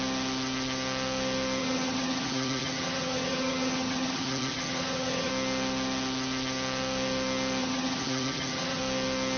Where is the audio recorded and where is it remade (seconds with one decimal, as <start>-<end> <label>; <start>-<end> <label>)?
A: 0.0-1.6 recorded; 1.6-5.3 remade; 5.3-7.6 recorded; 7.6-8.8 remade; 8.8-9.4 recorded